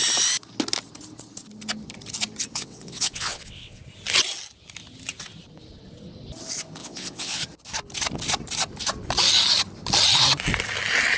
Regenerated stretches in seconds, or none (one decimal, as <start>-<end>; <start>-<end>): 2.5-3.8; 6.8-7.4